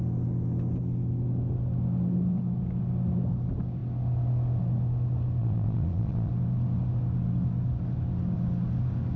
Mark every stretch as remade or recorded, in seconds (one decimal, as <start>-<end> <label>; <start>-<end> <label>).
0.0-5.4 recorded; 5.4-6.3 remade; 6.3-9.2 recorded